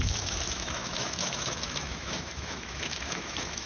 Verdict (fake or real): fake